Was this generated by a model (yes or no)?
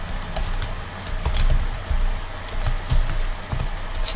no